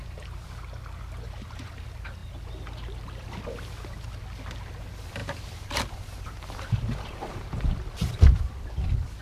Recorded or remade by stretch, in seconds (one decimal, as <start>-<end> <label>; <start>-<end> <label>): 0.0-5.2 recorded; 5.2-7.6 remade; 7.6-9.2 recorded